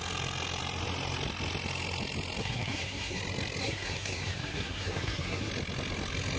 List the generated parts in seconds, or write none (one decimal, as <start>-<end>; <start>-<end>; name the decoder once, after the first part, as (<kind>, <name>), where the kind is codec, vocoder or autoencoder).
2.4-3.2 (codec, SNAC); 3.6-5.5